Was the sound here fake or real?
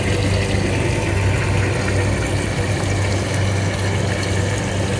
real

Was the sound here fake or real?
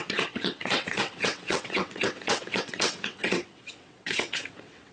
fake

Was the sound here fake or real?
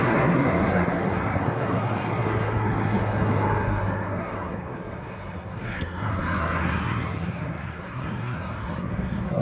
fake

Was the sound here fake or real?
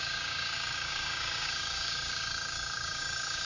fake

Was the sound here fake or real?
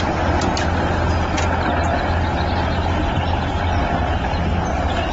real